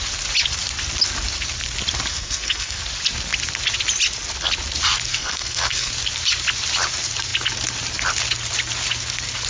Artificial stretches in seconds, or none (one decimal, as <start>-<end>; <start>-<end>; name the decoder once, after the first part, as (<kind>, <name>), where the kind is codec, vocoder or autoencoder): 2.1-2.8 (codec, SNAC); 5.1-5.9